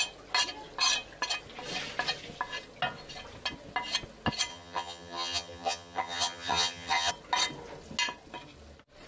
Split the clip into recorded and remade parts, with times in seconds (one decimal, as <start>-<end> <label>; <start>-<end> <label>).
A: 0.0-4.5 recorded; 4.5-7.1 remade; 7.1-9.1 recorded